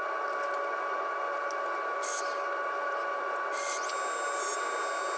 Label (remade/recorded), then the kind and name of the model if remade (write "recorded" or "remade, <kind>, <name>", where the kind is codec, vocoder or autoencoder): recorded